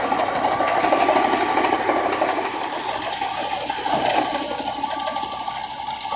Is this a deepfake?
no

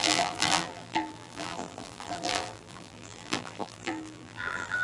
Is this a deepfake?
yes